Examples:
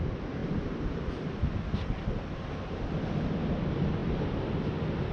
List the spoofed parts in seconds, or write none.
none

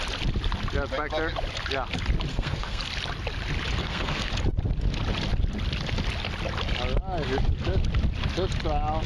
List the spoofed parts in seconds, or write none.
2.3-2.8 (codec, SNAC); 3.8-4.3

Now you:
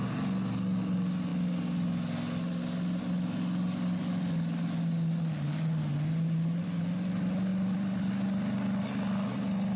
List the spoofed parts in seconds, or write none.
7.5-8.1 (vocoder, BigVGAN v2)

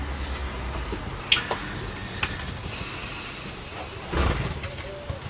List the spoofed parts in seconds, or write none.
none